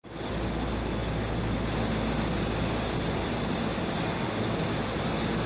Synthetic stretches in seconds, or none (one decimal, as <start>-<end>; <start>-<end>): none